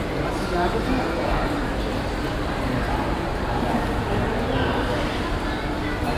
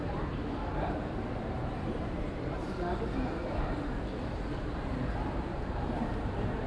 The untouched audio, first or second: first